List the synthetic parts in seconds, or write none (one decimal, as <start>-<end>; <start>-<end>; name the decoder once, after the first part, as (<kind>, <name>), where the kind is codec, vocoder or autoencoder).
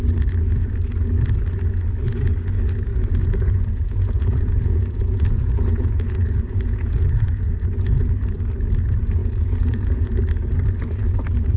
2.9-7.9 (vocoder, Vocos); 9.2-10.2